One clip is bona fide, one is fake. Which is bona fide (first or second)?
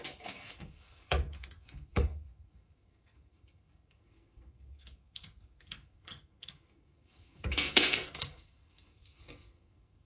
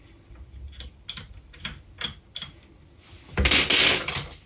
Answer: second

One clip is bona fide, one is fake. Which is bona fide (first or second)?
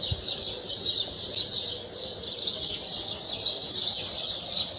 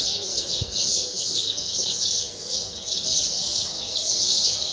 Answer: first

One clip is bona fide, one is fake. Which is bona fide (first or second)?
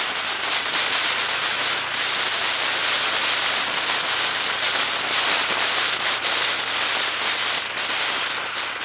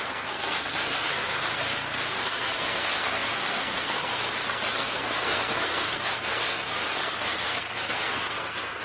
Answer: first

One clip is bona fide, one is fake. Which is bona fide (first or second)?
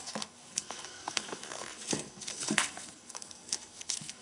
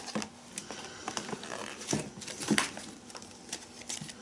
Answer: second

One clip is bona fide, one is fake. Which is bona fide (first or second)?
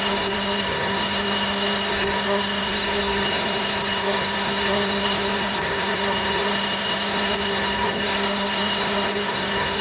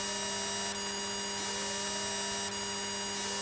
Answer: second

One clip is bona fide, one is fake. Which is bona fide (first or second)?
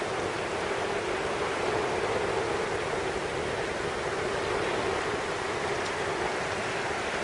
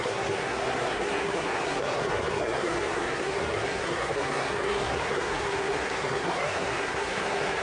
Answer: first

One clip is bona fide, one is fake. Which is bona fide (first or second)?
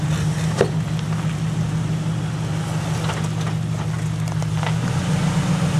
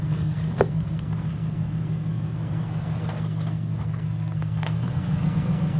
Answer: first